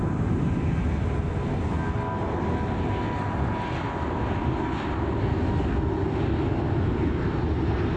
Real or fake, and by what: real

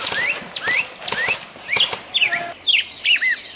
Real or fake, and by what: real